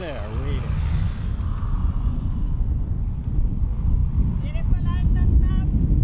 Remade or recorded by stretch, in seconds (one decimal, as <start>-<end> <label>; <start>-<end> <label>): 0.0-1.8 recorded; 1.8-2.9 remade; 2.9-6.0 recorded